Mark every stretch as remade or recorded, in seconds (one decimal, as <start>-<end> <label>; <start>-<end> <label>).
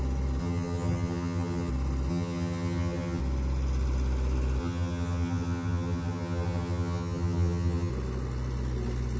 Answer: 0.0-0.4 recorded; 0.4-1.7 remade; 1.7-2.1 recorded; 2.1-3.2 remade; 3.2-4.6 recorded; 4.6-7.9 remade; 7.9-9.2 recorded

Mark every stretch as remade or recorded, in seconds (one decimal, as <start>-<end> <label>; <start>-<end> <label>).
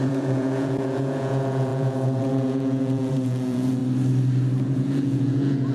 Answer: 0.0-3.8 remade; 3.8-4.6 recorded; 4.6-5.7 remade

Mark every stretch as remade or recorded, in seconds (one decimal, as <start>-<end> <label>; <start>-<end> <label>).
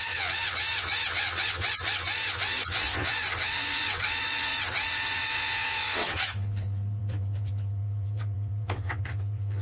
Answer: 0.0-9.6 remade